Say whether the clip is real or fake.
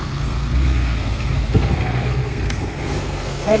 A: fake